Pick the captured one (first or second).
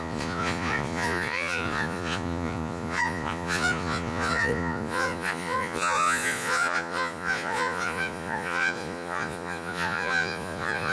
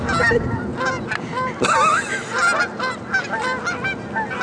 second